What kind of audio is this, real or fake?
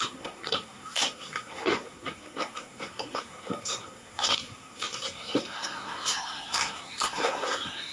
fake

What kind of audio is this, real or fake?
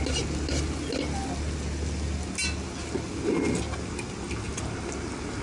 real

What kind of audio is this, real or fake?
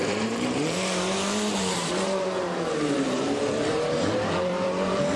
fake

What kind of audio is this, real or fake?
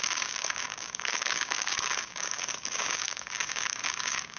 fake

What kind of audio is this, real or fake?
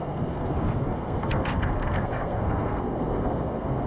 fake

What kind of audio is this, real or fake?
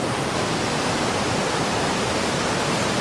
fake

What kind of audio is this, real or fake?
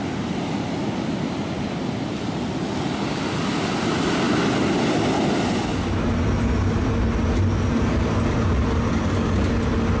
real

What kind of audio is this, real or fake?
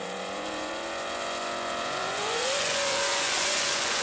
fake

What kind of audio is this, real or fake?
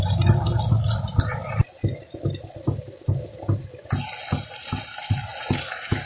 real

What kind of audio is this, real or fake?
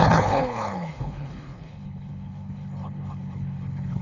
fake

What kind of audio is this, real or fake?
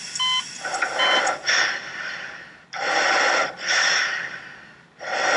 real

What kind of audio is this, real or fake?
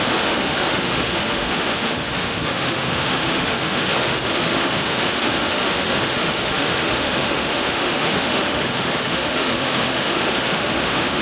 fake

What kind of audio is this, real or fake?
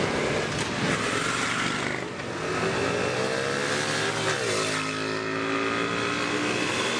real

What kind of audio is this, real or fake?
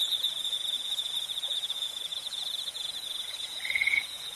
fake